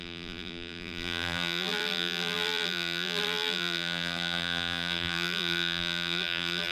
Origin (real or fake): fake